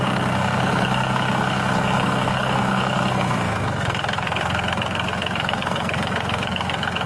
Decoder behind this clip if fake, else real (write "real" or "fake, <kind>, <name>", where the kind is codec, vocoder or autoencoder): fake, codec, SNAC